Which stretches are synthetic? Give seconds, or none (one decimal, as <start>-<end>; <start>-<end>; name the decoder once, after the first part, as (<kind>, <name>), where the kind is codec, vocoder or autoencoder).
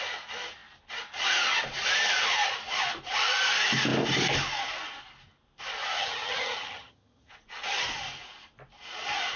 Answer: 6.0-7.3 (vocoder, HiFi-GAN)